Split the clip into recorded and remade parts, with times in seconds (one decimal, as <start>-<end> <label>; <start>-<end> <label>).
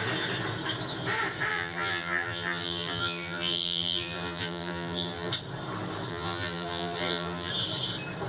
0.0-1.5 recorded; 1.5-5.3 remade; 5.3-6.1 recorded; 6.1-7.5 remade; 7.5-8.3 recorded